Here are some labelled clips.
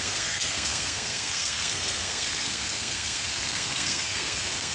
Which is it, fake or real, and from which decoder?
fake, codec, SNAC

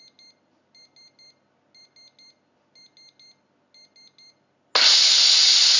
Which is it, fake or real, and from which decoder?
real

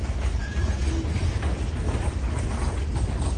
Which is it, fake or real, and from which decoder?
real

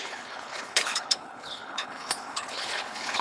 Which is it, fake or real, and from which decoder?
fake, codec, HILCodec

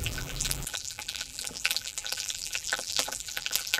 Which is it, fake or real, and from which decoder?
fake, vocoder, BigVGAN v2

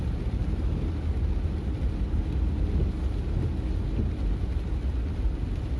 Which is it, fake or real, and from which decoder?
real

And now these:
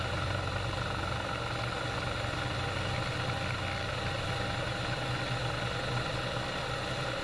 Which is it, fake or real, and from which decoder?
real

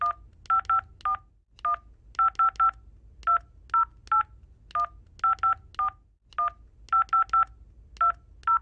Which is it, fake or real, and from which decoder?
real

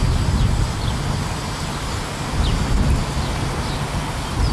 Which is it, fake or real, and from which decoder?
real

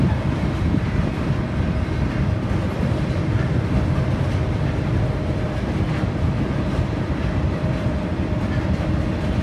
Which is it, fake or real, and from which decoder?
real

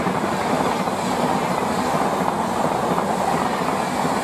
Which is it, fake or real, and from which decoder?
real